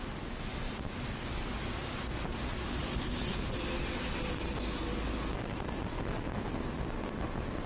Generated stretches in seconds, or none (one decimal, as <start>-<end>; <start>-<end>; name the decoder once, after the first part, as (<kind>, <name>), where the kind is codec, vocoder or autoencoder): none